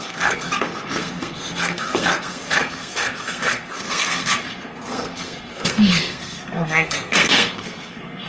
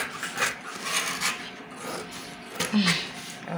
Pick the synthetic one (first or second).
first